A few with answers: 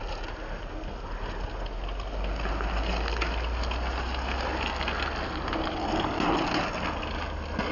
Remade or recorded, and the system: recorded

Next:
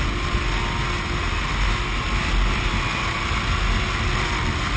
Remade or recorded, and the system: recorded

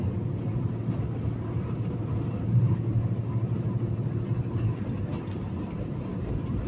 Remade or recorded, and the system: recorded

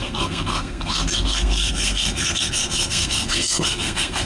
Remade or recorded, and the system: remade, codec, SNAC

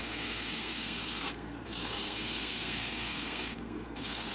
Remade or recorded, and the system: remade, codec, SNAC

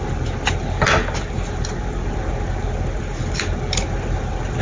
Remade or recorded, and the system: recorded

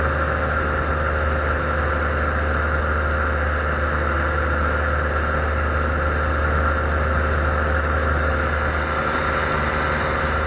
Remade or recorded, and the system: recorded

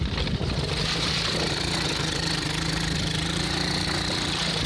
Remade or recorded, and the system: recorded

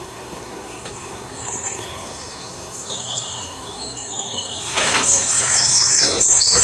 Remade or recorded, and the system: remade, codec, SNAC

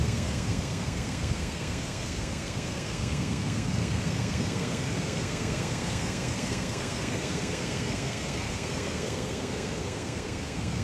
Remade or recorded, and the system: remade, codec, SNAC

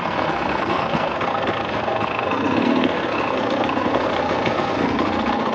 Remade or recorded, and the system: remade, codec, SNAC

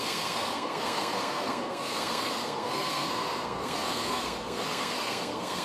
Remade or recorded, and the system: remade, codec, SNAC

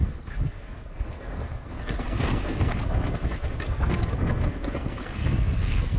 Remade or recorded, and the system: remade, codec, SNAC